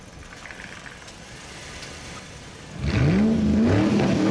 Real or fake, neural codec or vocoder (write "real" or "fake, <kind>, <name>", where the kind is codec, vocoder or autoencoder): real